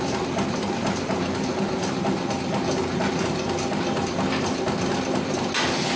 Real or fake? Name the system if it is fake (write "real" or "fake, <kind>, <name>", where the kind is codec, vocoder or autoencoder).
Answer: real